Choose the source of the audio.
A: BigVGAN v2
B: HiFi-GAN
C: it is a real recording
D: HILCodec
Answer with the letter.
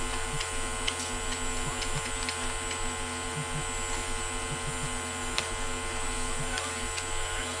C